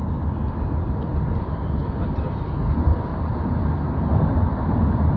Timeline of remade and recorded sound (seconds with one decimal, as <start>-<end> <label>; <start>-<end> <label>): 0.0-1.8 remade; 1.8-2.6 recorded; 2.6-3.1 remade; 3.1-4.0 recorded; 4.0-5.2 remade

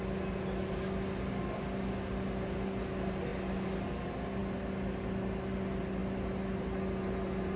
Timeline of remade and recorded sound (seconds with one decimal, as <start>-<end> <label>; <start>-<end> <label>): 0.0-7.6 recorded

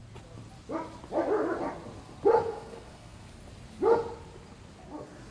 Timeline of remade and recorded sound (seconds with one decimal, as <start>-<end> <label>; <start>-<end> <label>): 0.0-2.5 recorded; 2.5-3.3 remade; 3.3-5.3 recorded

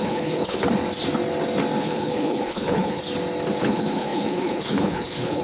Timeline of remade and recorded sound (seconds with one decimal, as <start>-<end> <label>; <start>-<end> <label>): 0.0-0.6 remade; 0.6-1.8 recorded; 1.8-3.0 remade; 3.0-3.6 recorded; 3.6-5.4 remade

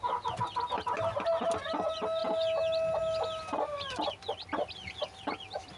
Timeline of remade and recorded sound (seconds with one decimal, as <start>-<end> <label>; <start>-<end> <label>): 0.0-5.8 recorded

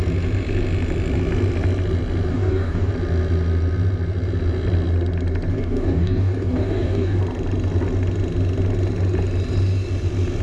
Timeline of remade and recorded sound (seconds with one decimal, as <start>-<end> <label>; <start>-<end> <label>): 0.0-2.3 recorded; 2.3-2.9 remade; 2.9-5.5 recorded; 5.5-7.2 remade; 7.2-10.4 recorded